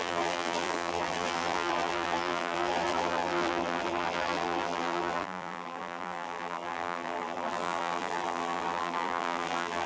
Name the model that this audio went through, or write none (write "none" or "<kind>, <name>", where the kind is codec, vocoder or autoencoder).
vocoder, BigVGAN v2